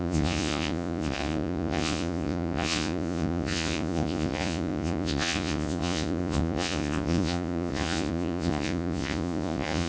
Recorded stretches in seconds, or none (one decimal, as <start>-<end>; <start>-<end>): none